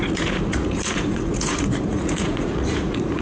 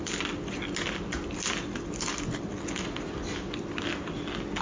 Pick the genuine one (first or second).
second